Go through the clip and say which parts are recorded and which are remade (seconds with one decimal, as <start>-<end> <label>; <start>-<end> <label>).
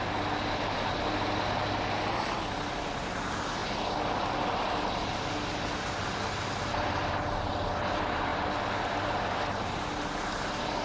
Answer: 0.0-7.0 remade; 7.0-7.5 recorded; 7.5-8.3 remade; 8.3-9.3 recorded; 9.3-10.8 remade